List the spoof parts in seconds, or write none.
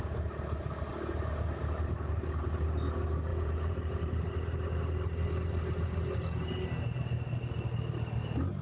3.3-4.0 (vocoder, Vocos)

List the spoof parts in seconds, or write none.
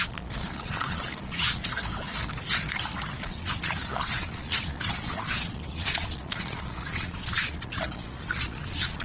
0.0-1.8 (vocoder, Vocos); 3.2-9.0